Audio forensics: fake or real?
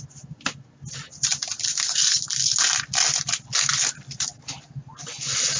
real